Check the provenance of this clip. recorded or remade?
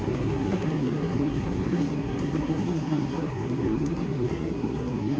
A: remade